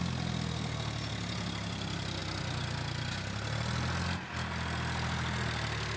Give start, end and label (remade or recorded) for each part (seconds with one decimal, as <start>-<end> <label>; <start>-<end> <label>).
0.0-6.0 recorded